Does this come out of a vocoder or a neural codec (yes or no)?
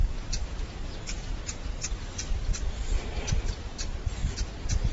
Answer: no